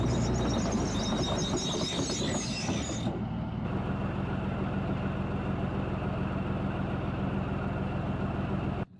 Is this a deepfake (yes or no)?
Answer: no